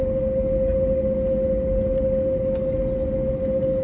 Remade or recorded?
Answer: recorded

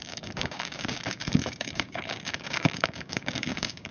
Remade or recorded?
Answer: remade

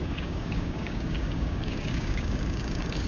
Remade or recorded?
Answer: remade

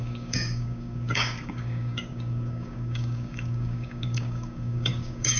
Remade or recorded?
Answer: remade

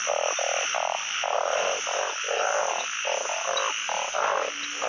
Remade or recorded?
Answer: recorded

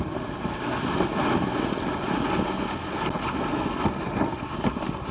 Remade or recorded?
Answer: recorded